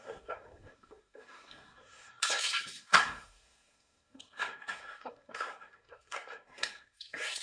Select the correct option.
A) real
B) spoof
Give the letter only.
B